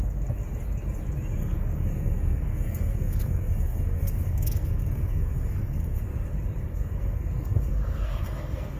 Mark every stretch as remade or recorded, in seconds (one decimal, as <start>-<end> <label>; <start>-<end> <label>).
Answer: 0.0-1.4 recorded; 1.4-6.3 remade; 6.3-6.7 recorded; 6.7-8.8 remade